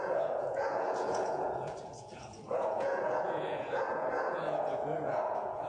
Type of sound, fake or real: fake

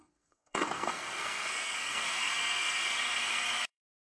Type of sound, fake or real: fake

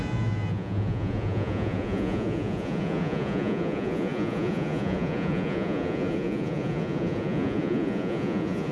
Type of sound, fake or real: fake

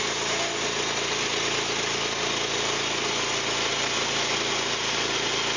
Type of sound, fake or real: real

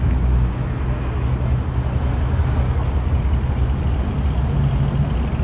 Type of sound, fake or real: real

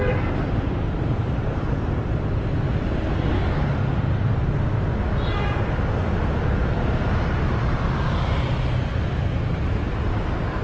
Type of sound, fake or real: real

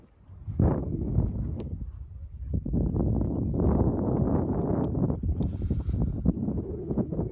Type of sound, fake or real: real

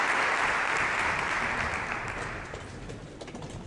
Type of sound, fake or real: real